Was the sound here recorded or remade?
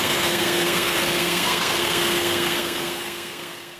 remade